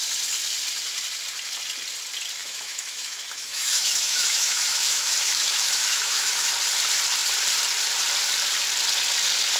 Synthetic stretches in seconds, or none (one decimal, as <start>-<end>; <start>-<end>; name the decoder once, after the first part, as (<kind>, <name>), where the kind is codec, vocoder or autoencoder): 2.4-6.5 (autoencoder, DAC-VAE)